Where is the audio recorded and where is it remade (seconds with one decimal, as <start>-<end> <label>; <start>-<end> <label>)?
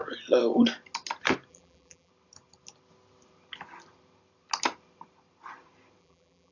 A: 0.0-1.5 recorded; 1.5-2.1 remade; 2.1-6.0 recorded; 6.0-6.5 remade